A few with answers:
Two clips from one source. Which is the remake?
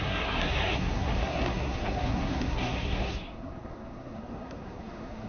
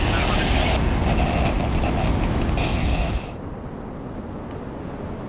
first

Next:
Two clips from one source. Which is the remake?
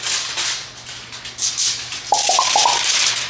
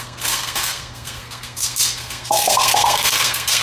second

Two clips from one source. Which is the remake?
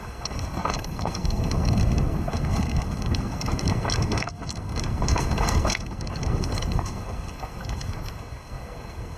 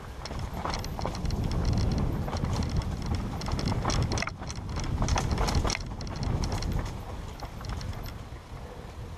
first